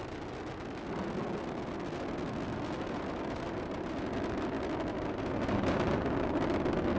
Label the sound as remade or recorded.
recorded